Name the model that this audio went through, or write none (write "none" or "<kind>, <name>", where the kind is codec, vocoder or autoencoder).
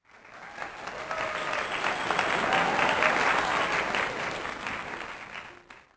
none